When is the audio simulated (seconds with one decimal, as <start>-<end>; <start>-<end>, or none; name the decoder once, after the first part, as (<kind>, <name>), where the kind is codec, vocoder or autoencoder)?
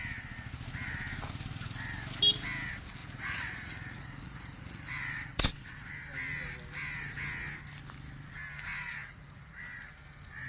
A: 3.0-5.9 (vocoder, Vocos); 9.0-9.6